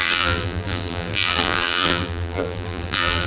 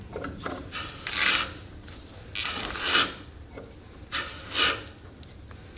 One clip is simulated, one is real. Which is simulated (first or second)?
first